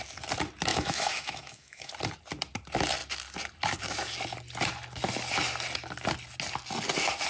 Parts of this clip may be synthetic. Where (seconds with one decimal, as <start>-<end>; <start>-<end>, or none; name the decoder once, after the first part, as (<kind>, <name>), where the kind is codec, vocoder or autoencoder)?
0.7-1.9 (autoencoder, DAC-VAE)